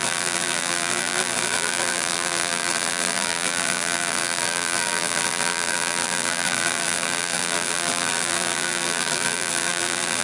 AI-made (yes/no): yes